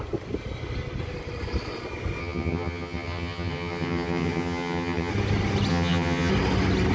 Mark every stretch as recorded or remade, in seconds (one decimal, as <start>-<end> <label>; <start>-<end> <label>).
0.0-2.2 recorded; 2.2-5.1 remade; 5.1-5.7 recorded; 5.7-6.3 remade; 6.3-6.9 recorded